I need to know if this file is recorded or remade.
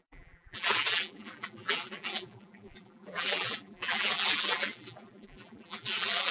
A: remade